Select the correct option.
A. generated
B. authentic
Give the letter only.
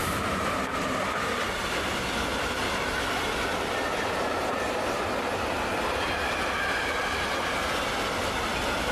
B